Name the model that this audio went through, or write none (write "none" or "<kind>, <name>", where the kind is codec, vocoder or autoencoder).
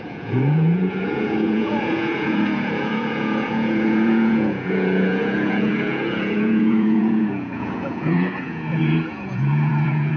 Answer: vocoder, Vocos